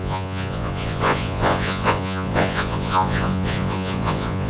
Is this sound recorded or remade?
remade